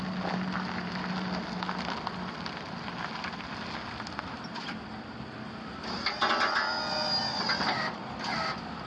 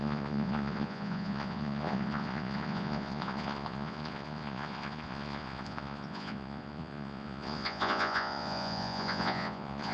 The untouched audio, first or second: first